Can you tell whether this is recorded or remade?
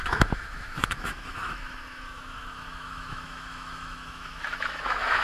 remade